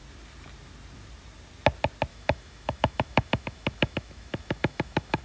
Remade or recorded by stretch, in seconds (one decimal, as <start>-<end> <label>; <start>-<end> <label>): 0.0-2.1 recorded; 2.1-5.2 remade